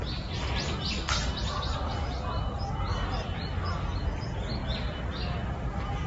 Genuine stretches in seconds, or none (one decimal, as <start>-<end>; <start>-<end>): 0.0-6.1